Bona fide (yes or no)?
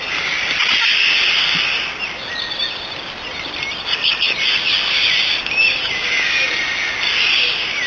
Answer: yes